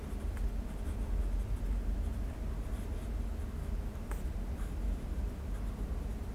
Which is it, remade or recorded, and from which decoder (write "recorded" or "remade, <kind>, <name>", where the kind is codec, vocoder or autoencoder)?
recorded